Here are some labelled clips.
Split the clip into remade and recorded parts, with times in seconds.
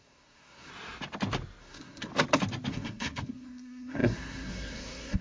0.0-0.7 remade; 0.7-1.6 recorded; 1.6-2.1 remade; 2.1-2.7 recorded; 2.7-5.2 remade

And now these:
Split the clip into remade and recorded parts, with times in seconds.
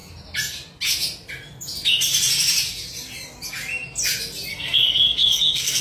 0.0-4.5 recorded; 4.5-5.8 remade